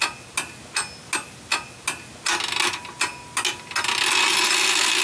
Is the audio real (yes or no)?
yes